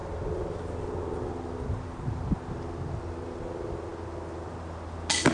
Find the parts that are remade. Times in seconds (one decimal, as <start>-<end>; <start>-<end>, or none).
none